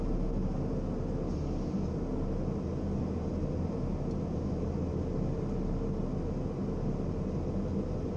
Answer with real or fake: real